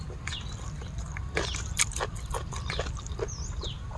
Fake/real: fake